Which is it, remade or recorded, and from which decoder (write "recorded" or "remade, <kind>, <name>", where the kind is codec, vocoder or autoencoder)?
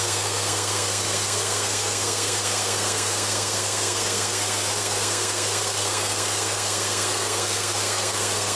remade, codec, SNAC